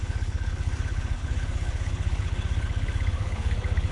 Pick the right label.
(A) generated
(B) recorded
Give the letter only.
A